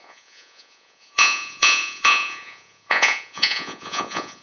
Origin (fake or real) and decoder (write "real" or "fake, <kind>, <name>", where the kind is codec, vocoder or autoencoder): fake, vocoder, Vocos